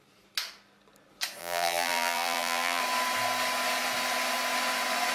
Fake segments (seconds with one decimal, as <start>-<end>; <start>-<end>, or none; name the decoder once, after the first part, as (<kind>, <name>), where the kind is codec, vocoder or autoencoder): 1.4-2.8 (vocoder, BigVGAN v2)